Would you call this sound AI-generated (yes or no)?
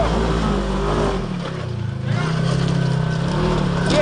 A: no